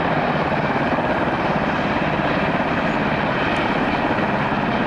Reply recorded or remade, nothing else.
recorded